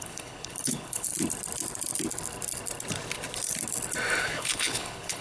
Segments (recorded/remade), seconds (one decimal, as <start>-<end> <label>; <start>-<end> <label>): 0.0-1.1 remade; 1.1-4.2 recorded; 4.2-5.2 remade